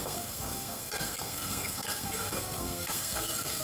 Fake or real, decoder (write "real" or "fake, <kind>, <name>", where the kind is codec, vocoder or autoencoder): fake, codec, SNAC